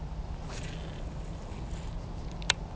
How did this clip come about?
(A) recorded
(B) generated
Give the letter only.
A